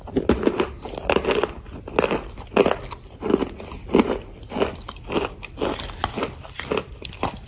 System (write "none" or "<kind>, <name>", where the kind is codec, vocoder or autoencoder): none